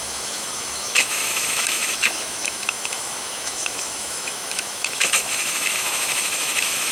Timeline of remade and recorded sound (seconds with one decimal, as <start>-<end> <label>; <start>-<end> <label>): 0.0-6.9 remade